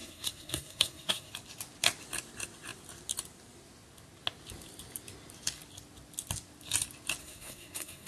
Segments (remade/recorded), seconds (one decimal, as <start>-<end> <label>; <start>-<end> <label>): 0.0-1.3 remade; 1.3-7.2 recorded; 7.2-8.1 remade